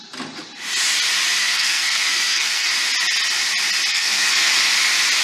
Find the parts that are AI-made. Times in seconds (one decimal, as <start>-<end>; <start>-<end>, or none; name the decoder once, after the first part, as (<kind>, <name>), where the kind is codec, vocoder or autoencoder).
1.4-2.7 (codec, SNAC); 3.9-4.5